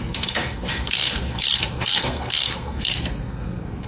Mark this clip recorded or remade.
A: remade